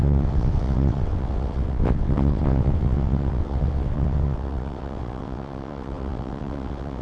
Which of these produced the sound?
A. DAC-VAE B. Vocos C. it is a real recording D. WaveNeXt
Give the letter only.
D